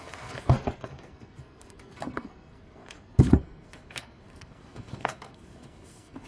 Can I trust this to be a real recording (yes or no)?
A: no